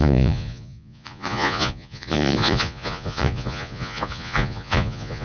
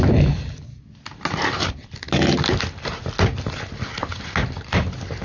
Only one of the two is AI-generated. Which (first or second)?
first